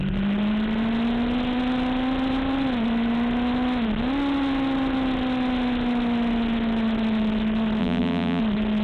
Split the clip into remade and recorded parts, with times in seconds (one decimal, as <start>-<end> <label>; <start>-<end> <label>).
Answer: 0.0-7.8 recorded; 7.8-8.4 remade; 8.4-8.8 recorded